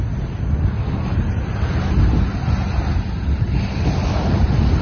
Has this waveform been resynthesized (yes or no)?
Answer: no